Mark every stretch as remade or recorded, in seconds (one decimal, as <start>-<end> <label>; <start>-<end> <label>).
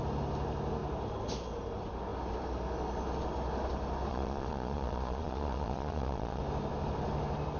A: 0.0-4.1 recorded; 4.1-6.4 remade; 6.4-7.6 recorded